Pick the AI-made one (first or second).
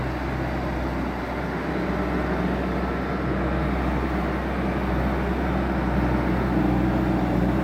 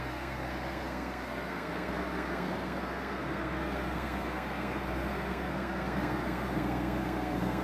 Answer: second